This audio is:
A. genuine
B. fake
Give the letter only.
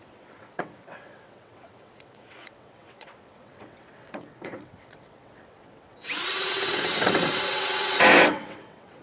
B